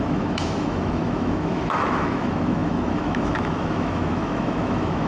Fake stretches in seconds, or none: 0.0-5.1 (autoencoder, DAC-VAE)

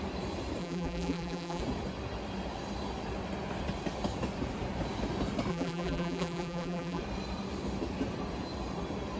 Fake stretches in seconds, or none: 0.6-1.6 (vocoder, BigVGAN v2); 5.5-7.0

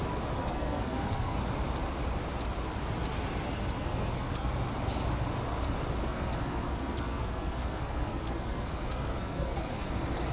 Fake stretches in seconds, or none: 0.4-1.4 (codec, SNAC); 3.8-4.5; 6.0-9.9

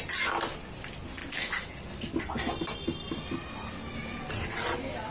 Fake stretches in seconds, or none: none

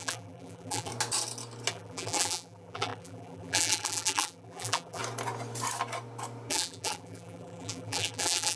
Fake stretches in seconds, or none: 0.0-0.9 (vocoder, BigVGAN v2); 1.7-5.0; 6.5-8.6

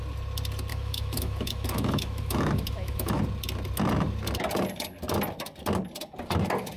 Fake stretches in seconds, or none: 0.7-3.2 (autoencoder, DAC-VAE)

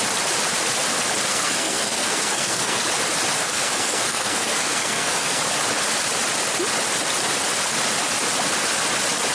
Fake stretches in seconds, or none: 1.3-2.8 (codec, SNAC); 3.4-5.4

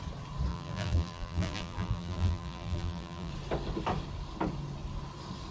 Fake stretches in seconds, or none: 0.5-3.3 (vocoder, BigVGAN v2)